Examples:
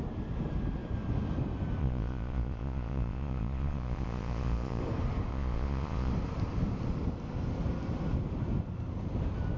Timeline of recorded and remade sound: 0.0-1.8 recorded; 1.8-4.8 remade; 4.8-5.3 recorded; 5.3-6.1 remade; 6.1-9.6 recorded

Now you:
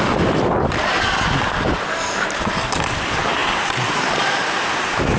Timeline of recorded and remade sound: 0.0-5.2 recorded